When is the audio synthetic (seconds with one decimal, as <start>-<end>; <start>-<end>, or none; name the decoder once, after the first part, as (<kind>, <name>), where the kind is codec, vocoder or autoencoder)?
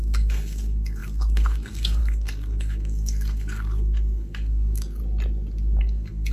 0.0-5.0 (codec, SNAC); 5.8-6.3